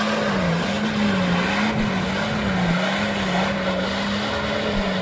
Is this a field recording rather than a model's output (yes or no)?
yes